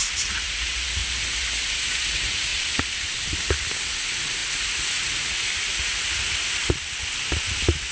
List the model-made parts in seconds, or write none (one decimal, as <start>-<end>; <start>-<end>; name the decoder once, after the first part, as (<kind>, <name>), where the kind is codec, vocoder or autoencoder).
0.0-1.0 (vocoder, Vocos); 1.9-2.5; 3.8-6.6